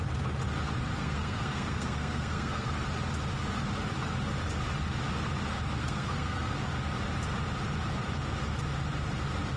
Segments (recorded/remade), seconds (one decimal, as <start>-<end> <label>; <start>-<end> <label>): 0.0-1.0 recorded; 1.0-2.7 remade; 2.7-5.8 recorded; 5.8-6.5 remade; 6.5-9.6 recorded